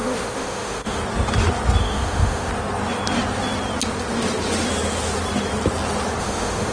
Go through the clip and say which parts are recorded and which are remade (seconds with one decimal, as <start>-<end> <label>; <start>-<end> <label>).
0.0-1.0 remade; 1.0-1.8 recorded; 1.8-2.5 remade; 2.5-6.2 recorded; 6.2-6.7 remade